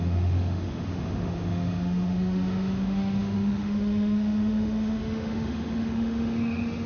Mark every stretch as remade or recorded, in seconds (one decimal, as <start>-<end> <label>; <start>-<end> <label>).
0.0-6.9 remade